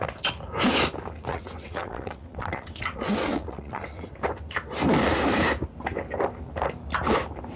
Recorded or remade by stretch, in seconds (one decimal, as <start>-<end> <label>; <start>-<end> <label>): 0.0-1.3 recorded; 1.3-4.2 remade; 4.2-7.6 recorded

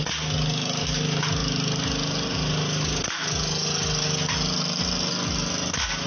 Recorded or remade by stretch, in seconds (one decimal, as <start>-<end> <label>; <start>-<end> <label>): 0.0-6.1 recorded

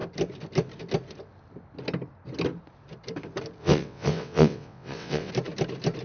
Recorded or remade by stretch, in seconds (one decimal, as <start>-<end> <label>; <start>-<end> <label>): 0.0-3.6 recorded; 3.6-5.3 remade; 5.3-6.0 recorded

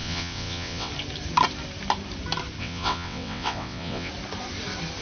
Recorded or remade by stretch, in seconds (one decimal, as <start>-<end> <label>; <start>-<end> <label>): 0.0-0.9 remade; 0.9-2.6 recorded; 2.6-4.1 remade; 4.1-5.0 recorded

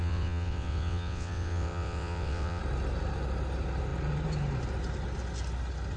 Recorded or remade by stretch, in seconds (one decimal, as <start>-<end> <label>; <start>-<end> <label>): 0.0-2.6 remade; 2.6-6.0 recorded

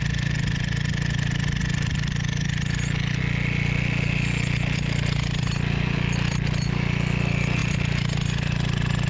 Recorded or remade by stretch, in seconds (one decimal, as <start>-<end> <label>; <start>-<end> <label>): 0.0-9.1 recorded

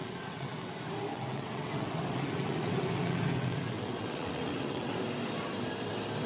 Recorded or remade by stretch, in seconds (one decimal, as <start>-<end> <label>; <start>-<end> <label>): 0.0-0.7 remade; 0.7-1.1 recorded; 1.1-4.9 remade; 4.9-6.3 recorded